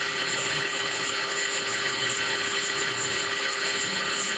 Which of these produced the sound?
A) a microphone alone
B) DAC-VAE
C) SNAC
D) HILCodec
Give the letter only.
D